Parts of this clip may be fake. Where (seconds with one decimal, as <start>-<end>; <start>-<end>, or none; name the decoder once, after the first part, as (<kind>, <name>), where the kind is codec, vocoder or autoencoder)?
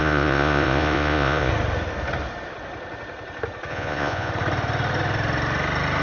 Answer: 0.0-1.5 (vocoder, Vocos); 3.7-4.3